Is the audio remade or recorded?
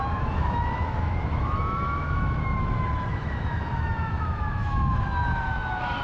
remade